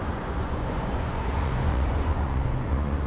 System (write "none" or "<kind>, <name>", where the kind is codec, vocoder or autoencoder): vocoder, Vocos